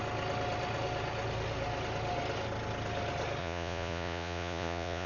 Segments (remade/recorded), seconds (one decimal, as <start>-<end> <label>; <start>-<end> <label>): 0.0-3.4 recorded; 3.4-5.1 remade

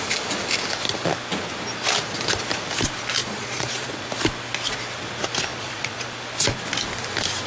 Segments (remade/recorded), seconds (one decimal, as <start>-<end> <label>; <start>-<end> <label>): 0.0-3.2 recorded; 3.2-4.1 remade; 4.1-5.5 recorded; 5.5-6.1 remade; 6.1-7.5 recorded

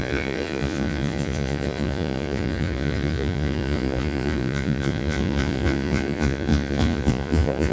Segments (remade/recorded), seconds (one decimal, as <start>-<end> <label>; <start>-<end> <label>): 0.0-7.7 remade

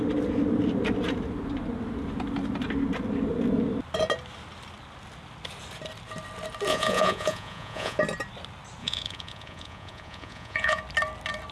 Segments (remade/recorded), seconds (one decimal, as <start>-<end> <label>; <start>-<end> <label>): 0.0-6.7 recorded; 6.7-8.0 remade; 8.0-8.8 recorded; 8.8-10.8 remade; 10.8-11.5 recorded

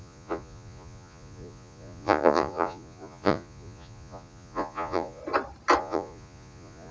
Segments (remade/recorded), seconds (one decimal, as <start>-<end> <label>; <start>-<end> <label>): 0.0-5.2 remade; 5.2-5.8 recorded; 5.8-6.9 remade

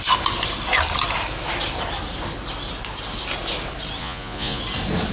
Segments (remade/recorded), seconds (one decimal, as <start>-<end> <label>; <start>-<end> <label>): 0.0-4.0 recorded; 4.0-4.6 remade; 4.6-5.1 recorded

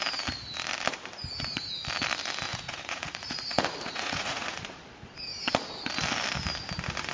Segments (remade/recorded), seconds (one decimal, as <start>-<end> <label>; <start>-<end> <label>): 0.0-2.5 recorded; 2.5-4.8 remade; 4.8-7.1 recorded